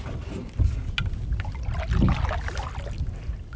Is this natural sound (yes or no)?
yes